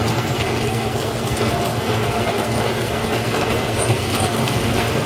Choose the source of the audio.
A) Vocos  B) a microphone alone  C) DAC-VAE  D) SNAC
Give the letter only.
D